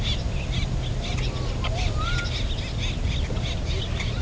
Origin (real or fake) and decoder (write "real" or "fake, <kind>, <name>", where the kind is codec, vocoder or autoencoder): real